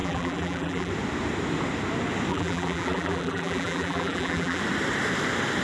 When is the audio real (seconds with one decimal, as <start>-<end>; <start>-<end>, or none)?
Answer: 0.9-2.3; 4.6-5.6